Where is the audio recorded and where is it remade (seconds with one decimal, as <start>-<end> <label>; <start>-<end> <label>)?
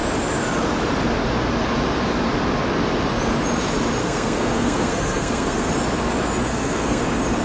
0.0-4.0 recorded; 4.0-5.7 remade; 5.7-6.5 recorded; 6.5-7.0 remade; 7.0-7.4 recorded